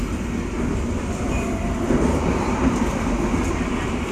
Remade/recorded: remade